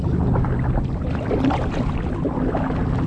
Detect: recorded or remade recorded